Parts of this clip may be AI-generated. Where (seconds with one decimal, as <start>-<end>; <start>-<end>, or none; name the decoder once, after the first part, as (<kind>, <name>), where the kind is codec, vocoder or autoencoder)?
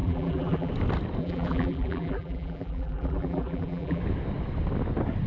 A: 0.0-0.7 (vocoder, BigVGAN v2); 1.2-4.0